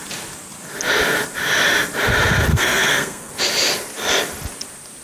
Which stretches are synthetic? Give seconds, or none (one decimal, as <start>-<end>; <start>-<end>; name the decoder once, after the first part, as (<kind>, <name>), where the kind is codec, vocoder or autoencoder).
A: 2.5-3.3 (codec, SNAC)